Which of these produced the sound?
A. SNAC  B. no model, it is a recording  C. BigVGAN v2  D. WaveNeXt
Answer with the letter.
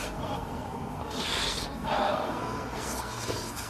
A